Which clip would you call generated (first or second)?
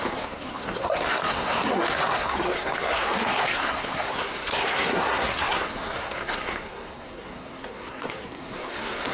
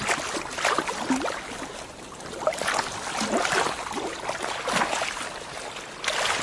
first